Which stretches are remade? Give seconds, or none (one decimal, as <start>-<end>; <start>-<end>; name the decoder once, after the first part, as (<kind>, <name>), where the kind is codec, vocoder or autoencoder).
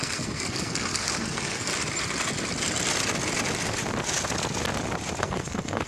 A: 0.0-1.7 (codec, SNAC); 5.2-5.9